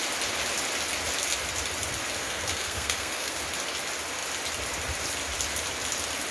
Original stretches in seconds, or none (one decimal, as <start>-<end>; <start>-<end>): 0.0-2.2; 3.4-6.3